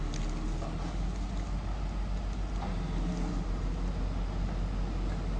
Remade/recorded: recorded